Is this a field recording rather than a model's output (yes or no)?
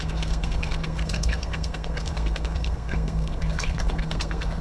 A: no